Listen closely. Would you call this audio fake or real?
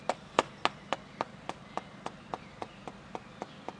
real